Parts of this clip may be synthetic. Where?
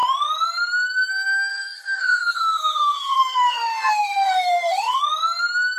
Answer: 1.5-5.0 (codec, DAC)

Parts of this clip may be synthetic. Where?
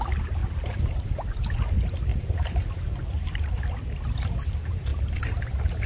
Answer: 0.4-1.0 (vocoder, BigVGAN v2); 2.1-3.6; 4.9-5.4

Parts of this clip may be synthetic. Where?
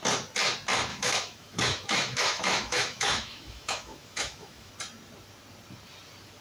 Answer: 0.9-4.7 (autoencoder, DAC-VAE)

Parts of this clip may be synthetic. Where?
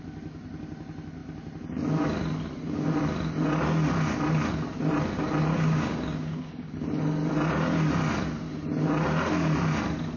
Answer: 5.5-6.7 (codec, DAC)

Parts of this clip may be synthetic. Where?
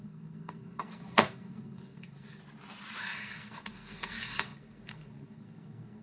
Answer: 0.0-2.4 (codec, SNAC); 3.0-6.0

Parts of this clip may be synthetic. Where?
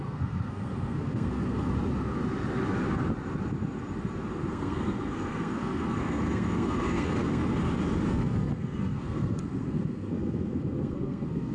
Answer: 0.0-1.7 (codec, SNAC); 4.5-7.4; 8.1-11.5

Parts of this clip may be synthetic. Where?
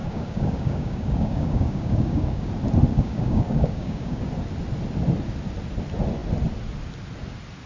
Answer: 0.0-2.5 (codec, DAC); 2.9-4.3